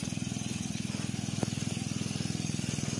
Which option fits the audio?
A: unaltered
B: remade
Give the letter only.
A